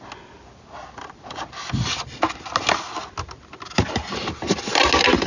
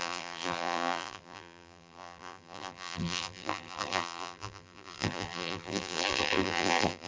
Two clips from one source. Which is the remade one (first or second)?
second